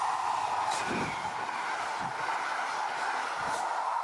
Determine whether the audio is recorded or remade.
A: recorded